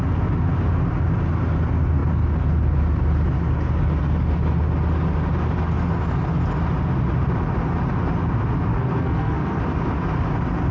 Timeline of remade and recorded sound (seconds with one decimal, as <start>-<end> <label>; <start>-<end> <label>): 0.0-8.7 recorded; 8.7-9.6 remade; 9.6-10.7 recorded